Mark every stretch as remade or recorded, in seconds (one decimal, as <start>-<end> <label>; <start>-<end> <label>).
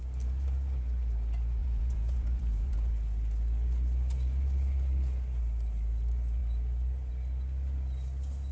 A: 0.0-1.6 recorded; 1.6-2.9 remade; 2.9-8.5 recorded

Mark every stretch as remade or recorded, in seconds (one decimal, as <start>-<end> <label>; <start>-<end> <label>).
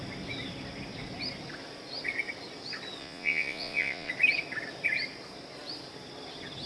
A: 0.0-3.0 recorded; 3.0-4.1 remade; 4.1-6.7 recorded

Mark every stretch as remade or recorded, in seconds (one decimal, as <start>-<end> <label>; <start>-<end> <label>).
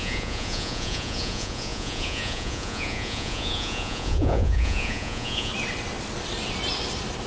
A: 0.0-5.5 remade; 5.5-7.3 recorded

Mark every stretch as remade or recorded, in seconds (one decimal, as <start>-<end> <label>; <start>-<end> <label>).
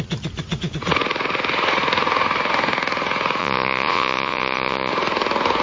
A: 0.0-3.4 recorded; 3.4-4.9 remade; 4.9-5.6 recorded